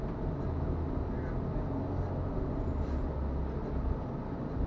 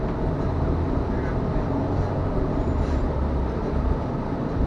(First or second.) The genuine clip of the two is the first